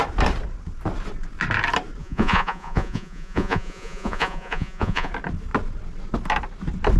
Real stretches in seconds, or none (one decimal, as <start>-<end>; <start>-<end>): 0.0-2.0; 5.1-7.0